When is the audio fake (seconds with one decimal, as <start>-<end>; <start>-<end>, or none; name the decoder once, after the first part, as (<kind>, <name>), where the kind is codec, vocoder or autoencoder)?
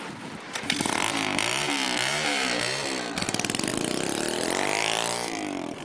0.0-1.5 (vocoder, BigVGAN v2); 3.2-3.7; 4.8-5.8